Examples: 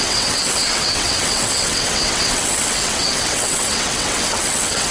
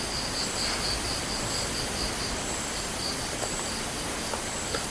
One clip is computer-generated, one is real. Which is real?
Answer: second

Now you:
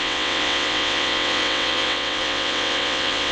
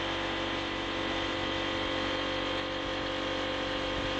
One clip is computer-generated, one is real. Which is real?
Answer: second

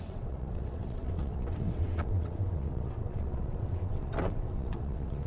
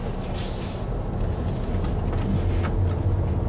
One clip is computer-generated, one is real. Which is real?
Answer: second